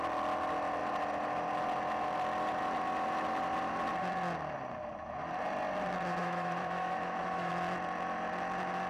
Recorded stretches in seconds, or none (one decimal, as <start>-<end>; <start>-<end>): 0.0-6.2; 7.5-8.9